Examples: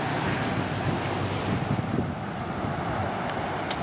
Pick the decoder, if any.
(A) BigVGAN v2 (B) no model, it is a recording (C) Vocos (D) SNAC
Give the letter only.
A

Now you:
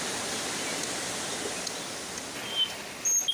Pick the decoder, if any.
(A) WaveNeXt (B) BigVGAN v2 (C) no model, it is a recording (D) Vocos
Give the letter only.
C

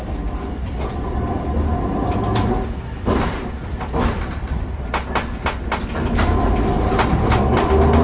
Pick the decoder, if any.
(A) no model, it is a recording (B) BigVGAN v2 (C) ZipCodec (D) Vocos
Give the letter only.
B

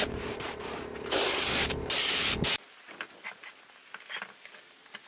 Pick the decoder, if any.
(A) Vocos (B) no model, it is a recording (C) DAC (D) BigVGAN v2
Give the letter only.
B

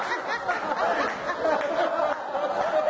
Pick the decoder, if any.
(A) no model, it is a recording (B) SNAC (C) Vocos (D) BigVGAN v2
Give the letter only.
A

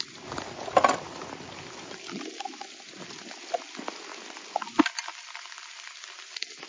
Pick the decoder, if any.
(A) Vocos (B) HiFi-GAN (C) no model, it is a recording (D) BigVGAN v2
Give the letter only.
C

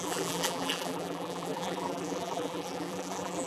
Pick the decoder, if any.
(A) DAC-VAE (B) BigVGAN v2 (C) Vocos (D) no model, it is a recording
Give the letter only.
B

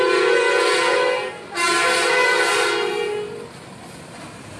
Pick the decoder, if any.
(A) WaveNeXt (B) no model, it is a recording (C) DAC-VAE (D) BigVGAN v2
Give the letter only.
B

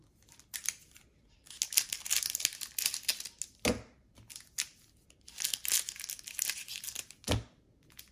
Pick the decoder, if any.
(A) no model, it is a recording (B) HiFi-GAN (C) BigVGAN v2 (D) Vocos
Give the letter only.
A